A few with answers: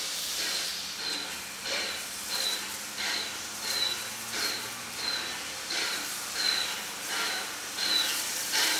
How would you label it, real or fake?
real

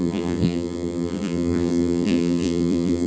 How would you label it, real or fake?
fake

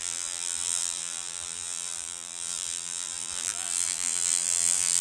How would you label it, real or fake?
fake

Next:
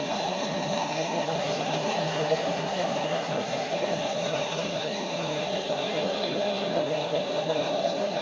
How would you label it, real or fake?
fake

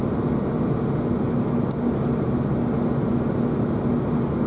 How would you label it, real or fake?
real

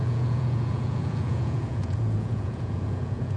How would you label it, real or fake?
fake